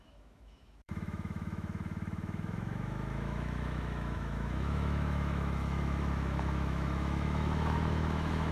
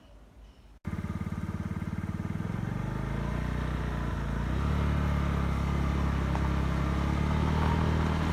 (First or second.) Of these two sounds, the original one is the second